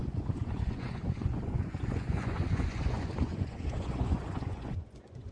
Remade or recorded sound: remade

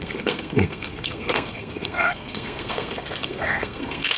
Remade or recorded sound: remade